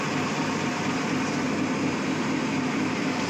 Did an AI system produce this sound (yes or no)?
yes